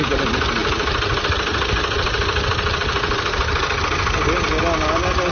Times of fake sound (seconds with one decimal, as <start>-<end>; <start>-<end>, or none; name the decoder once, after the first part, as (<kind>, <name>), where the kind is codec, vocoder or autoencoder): 0.6-3.8 (vocoder, BigVGAN v2)